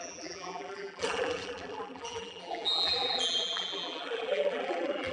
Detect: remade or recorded remade